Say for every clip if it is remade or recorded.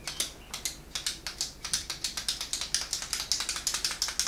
recorded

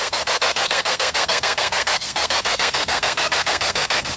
remade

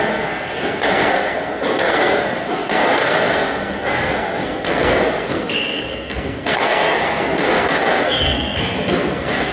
remade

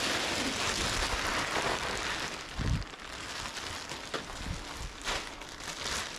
recorded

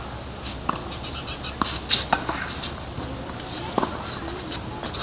recorded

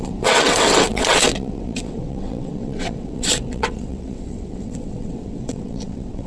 remade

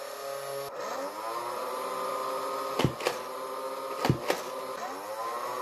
recorded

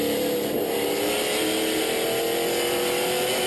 recorded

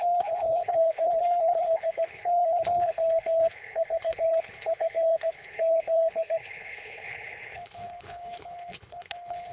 remade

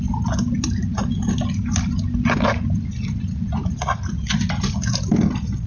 recorded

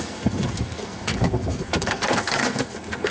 remade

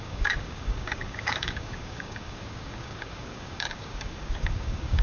remade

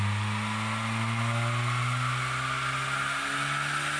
recorded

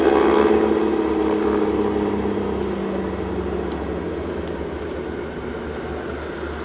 recorded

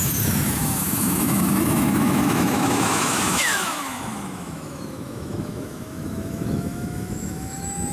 remade